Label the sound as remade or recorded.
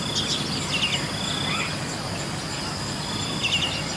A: recorded